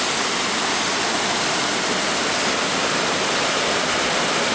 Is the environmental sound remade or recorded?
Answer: recorded